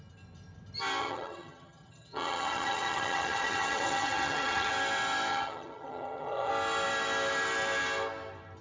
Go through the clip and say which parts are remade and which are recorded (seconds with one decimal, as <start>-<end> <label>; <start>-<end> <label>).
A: 0.0-1.0 recorded; 1.0-4.7 remade; 4.7-5.3 recorded; 5.3-6.5 remade; 6.5-8.6 recorded

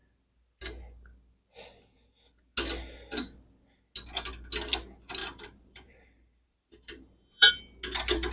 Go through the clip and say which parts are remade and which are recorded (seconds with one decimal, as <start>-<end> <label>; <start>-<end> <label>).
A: 0.0-5.2 recorded; 5.2-7.5 remade; 7.5-8.3 recorded

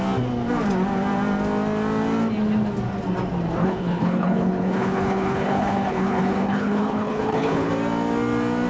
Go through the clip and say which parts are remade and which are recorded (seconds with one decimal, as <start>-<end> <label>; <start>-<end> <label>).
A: 0.0-3.6 recorded; 3.6-7.7 remade; 7.7-8.7 recorded

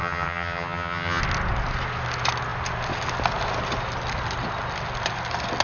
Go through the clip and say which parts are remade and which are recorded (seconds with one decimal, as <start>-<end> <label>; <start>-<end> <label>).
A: 0.0-1.2 remade; 1.2-5.6 recorded

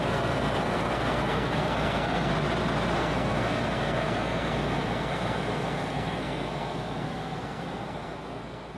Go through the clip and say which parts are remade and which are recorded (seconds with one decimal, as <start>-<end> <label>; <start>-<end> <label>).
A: 0.0-2.3 remade; 2.3-3.0 recorded; 3.0-8.8 remade

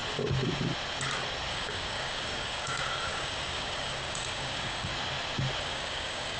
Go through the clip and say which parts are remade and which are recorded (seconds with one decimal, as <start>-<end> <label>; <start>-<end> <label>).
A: 0.0-1.5 recorded; 1.5-4.9 remade; 4.9-5.6 recorded; 5.6-6.4 remade

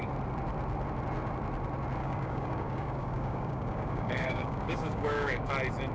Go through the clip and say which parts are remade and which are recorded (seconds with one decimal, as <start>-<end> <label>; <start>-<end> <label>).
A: 0.0-2.0 recorded; 2.0-5.5 remade; 5.5-5.9 recorded

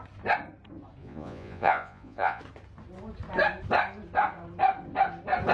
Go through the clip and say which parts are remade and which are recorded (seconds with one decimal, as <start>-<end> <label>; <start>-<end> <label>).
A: 0.0-1.0 recorded; 1.0-2.4 remade; 2.4-5.5 recorded